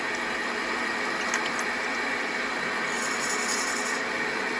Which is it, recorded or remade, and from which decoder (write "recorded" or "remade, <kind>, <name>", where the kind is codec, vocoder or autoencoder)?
recorded